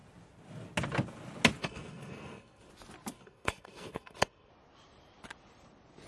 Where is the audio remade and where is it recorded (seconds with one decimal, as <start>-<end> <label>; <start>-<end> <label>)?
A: 0.0-1.6 recorded; 1.6-2.7 remade; 2.7-3.1 recorded; 3.1-4.5 remade; 4.5-6.1 recorded